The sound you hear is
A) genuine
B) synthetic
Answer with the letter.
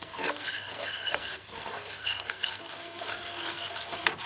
B